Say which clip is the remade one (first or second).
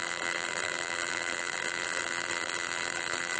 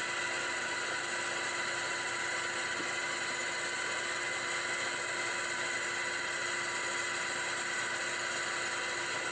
first